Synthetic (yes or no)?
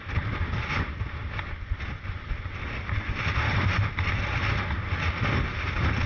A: no